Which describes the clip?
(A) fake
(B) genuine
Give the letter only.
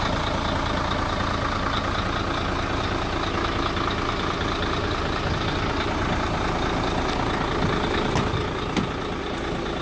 B